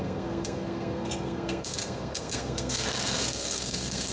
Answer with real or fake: fake